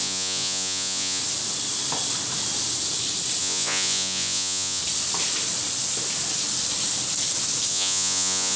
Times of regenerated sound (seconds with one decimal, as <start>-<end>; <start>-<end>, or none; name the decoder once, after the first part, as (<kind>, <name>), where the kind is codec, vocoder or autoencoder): 0.0-1.2 (vocoder, Vocos); 3.4-4.8; 7.7-8.6